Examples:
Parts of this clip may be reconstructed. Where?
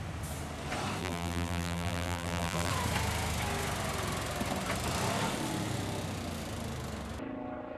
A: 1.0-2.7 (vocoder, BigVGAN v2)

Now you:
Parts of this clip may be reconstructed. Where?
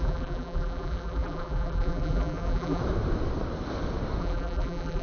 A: 0.0-2.8 (vocoder, BigVGAN v2); 4.2-5.0